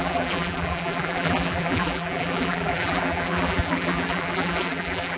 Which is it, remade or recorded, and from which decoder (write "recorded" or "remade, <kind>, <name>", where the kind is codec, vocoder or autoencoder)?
remade, vocoder, BigVGAN v2